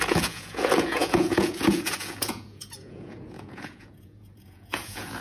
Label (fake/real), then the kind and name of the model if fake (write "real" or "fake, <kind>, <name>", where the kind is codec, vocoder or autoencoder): fake, vocoder, Vocos